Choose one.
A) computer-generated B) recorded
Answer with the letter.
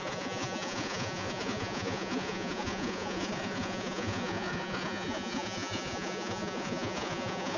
A